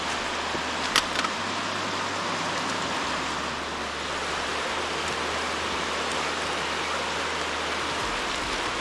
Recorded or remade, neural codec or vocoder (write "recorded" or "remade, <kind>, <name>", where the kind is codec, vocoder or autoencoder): recorded